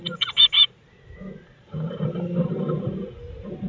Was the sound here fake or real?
real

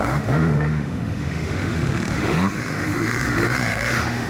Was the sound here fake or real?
fake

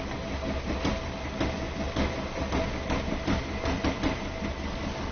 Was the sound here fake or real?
real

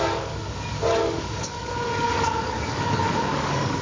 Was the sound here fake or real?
fake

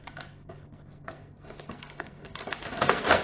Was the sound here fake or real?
fake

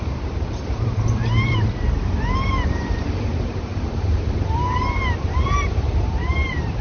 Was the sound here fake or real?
fake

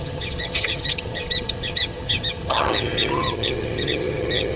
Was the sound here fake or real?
fake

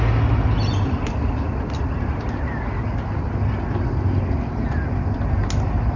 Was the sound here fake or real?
real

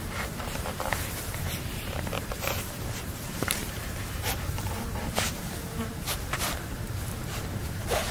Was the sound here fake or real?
fake